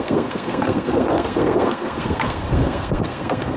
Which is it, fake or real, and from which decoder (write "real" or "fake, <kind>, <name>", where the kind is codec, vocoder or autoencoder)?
fake, codec, SNAC